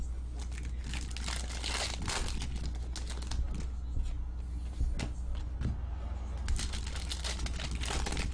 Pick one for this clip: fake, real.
real